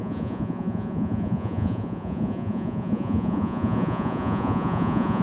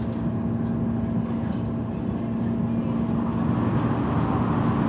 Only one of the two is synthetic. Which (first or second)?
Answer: first